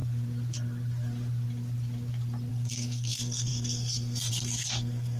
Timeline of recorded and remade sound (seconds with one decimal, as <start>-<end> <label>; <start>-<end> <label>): 0.0-2.5 recorded; 2.5-5.2 remade